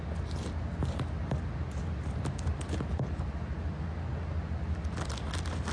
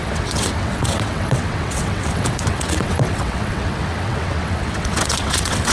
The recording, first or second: first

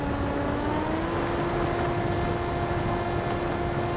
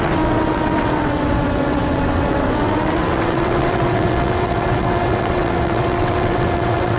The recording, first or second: first